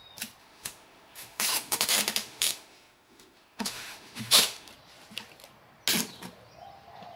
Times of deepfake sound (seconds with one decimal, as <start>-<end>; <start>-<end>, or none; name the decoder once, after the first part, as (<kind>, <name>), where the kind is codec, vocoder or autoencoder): 0.4-4.7 (autoencoder, DAC-VAE)